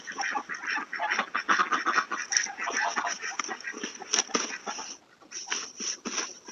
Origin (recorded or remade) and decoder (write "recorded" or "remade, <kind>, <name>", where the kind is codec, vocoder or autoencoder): recorded